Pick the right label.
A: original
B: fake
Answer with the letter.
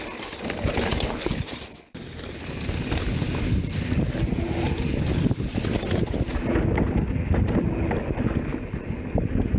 A